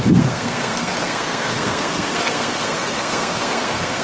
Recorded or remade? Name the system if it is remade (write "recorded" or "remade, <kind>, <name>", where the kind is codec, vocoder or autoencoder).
remade, codec, SNAC